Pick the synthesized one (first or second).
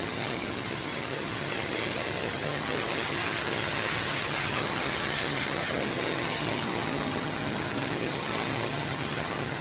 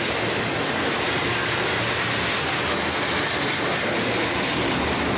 first